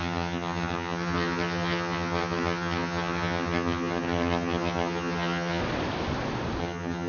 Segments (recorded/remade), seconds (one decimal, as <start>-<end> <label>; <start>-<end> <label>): 0.0-5.6 remade; 5.6-6.6 recorded; 6.6-7.1 remade